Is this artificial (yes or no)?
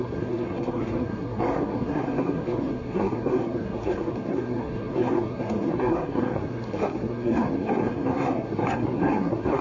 yes